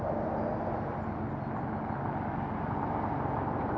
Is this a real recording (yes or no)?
yes